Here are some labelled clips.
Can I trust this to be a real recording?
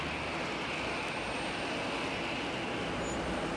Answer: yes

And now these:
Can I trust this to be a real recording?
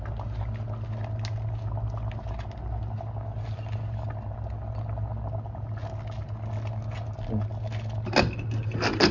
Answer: yes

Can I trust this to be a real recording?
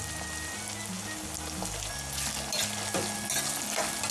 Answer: yes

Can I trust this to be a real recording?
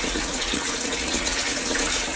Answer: no